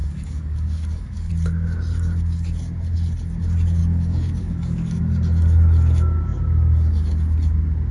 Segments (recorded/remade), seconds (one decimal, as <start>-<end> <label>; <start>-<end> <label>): 0.0-1.3 remade; 1.3-3.8 recorded; 3.8-5.0 remade; 5.0-7.9 recorded

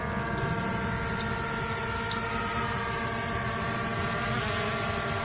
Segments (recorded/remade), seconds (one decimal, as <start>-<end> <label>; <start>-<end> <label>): 0.0-5.2 recorded